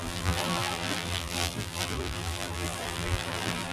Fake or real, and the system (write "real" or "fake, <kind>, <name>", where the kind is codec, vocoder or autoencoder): fake, vocoder, BigVGAN v2